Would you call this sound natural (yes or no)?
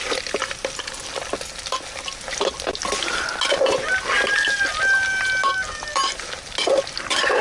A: yes